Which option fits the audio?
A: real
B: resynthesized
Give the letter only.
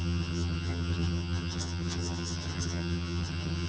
B